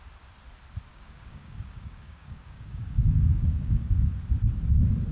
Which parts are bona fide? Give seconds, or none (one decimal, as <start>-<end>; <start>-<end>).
0.0-0.9; 3.9-5.1